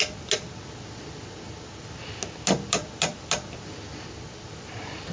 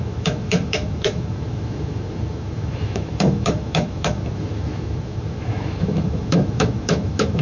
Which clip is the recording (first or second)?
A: first